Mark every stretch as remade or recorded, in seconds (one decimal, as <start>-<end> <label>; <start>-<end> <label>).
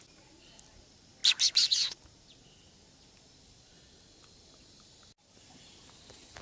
0.0-6.4 recorded